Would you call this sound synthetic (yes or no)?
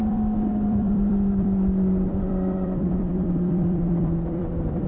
yes